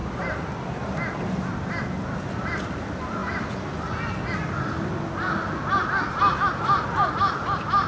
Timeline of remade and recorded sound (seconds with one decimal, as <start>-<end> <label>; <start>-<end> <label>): 0.0-7.4 recorded; 7.4-7.9 remade